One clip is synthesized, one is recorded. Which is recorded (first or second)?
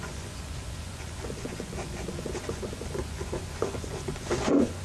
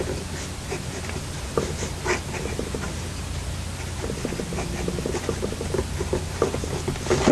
second